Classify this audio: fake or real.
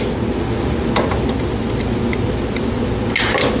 real